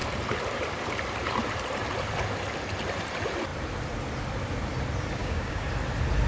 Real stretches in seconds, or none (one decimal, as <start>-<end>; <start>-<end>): 0.0-5.2; 5.7-6.3